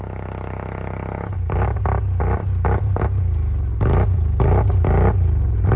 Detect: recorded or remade recorded